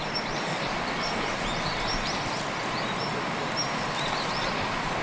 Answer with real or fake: real